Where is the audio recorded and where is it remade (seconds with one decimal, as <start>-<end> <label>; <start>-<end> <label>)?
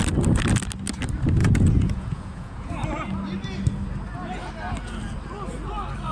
0.0-1.4 recorded; 1.4-2.7 remade; 2.7-6.1 recorded